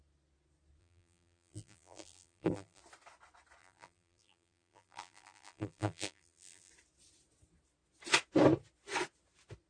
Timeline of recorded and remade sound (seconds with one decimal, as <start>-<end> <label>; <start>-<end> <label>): 0.0-0.8 recorded; 0.8-2.8 remade; 2.8-3.6 recorded; 3.6-6.7 remade; 6.7-9.7 recorded